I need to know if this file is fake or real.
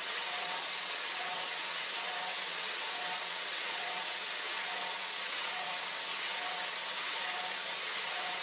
fake